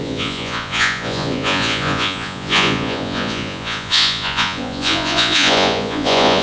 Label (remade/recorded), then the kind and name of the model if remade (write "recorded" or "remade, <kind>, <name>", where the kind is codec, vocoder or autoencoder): remade, vocoder, Vocos